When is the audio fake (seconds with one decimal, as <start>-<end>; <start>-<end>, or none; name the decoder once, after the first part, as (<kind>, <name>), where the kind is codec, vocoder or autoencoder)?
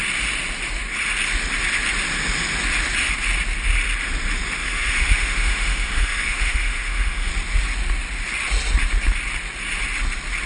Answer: 4.6-7.3 (autoencoder, DAC-VAE)